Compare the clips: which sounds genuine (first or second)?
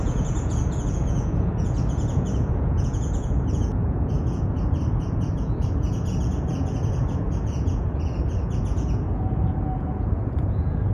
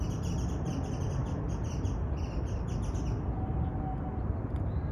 second